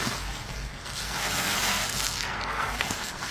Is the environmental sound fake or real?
fake